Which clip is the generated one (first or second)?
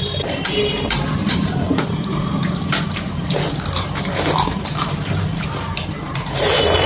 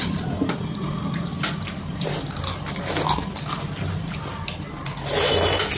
first